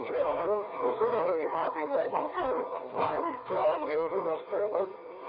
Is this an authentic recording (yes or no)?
no